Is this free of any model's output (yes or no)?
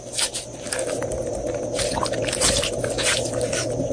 yes